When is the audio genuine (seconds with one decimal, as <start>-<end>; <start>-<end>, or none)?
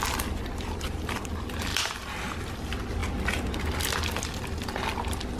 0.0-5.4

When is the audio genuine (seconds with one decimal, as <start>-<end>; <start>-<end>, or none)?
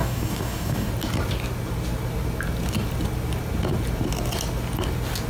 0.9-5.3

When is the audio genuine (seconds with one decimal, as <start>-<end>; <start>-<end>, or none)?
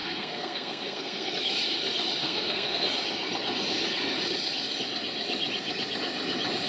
1.3-2.2; 2.9-6.7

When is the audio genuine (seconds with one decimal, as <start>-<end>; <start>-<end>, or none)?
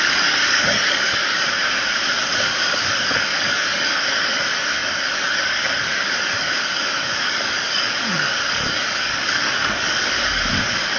1.6-2.2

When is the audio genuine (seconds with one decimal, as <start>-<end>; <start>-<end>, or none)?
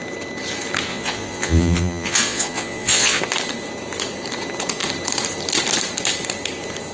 0.0-0.9; 3.2-6.9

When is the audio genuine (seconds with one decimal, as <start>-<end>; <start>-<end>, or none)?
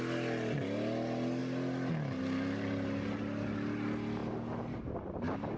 0.0-5.6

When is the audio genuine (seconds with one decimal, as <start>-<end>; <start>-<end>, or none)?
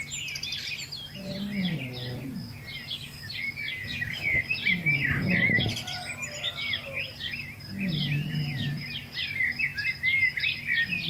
0.0-11.1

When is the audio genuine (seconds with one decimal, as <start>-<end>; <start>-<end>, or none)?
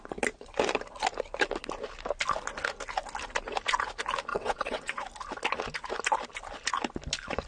0.0-4.3; 5.0-7.5